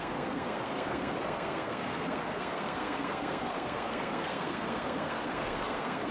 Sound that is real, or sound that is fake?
fake